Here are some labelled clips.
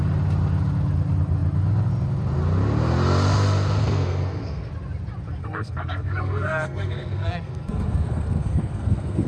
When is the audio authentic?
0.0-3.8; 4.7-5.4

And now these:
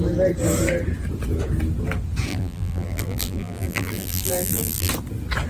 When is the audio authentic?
0.0-2.3; 4.9-5.5

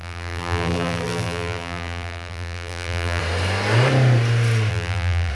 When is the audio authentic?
3.2-4.7

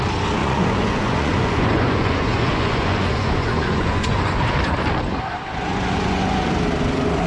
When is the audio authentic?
0.0-0.4; 4.4-5.5; 6.5-7.3